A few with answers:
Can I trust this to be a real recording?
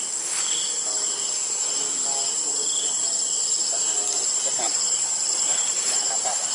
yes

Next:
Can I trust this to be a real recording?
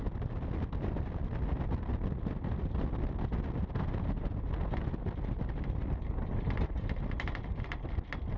yes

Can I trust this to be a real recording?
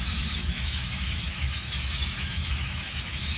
no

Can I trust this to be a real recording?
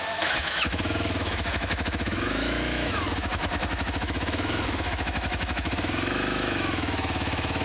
no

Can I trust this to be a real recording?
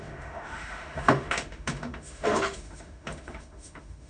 no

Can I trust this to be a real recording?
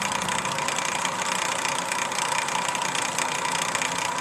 yes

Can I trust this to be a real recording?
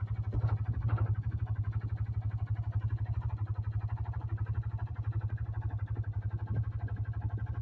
yes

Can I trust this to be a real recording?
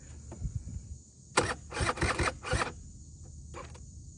yes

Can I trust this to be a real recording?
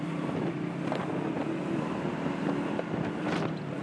yes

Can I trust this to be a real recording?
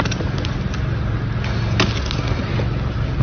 yes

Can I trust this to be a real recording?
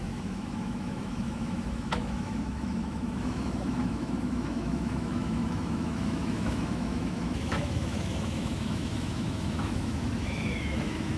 no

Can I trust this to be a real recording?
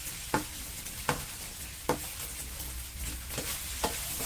yes